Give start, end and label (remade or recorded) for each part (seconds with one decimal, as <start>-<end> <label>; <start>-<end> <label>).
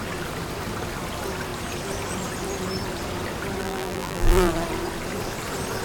0.0-3.6 recorded; 3.6-4.5 remade; 4.5-5.8 recorded